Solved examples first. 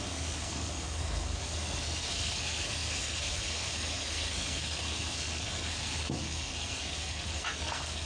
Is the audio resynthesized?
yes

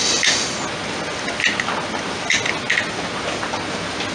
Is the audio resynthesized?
no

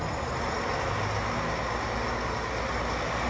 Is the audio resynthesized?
no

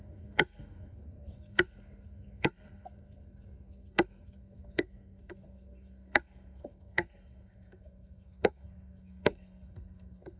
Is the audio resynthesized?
yes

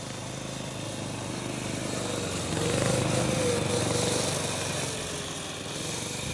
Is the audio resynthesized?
no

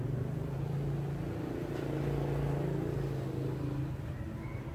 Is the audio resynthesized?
no